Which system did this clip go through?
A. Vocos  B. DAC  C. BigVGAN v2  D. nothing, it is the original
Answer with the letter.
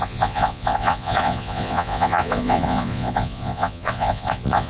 A